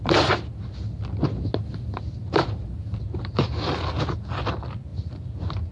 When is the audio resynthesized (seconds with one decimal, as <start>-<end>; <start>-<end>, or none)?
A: 2.2-3.5; 4.9-5.7